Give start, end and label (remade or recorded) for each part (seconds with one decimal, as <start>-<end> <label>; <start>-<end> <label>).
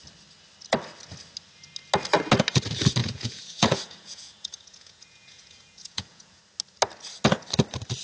0.0-3.0 recorded; 3.0-6.4 remade; 6.4-8.0 recorded